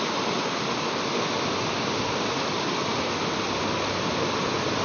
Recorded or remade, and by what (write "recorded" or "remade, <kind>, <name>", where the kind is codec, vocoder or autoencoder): recorded